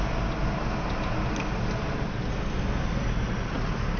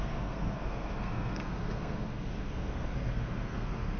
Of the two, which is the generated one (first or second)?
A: second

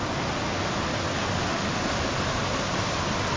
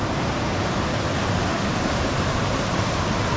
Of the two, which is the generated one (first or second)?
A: second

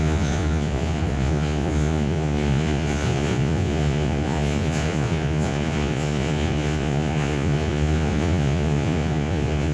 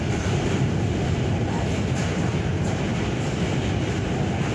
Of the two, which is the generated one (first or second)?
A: first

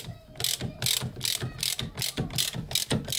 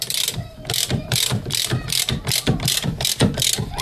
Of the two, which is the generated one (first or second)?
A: second